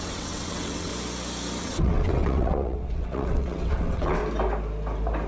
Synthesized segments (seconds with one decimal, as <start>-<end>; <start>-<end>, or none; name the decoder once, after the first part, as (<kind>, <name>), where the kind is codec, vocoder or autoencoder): 0.0-0.9 (vocoder, WaveNeXt); 1.6-4.2